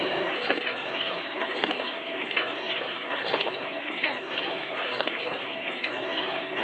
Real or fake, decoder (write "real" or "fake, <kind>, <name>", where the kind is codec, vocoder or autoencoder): fake, codec, SNAC